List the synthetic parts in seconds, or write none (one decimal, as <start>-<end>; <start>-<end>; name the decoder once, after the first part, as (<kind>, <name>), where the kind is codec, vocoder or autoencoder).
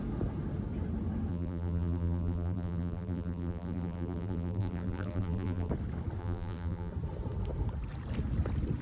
1.3-5.7 (vocoder, BigVGAN v2); 6.2-6.9